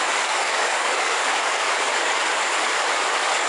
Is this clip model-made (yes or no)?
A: yes